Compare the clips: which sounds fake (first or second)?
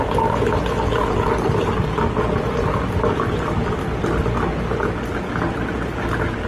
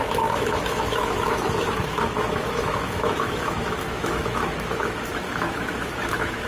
second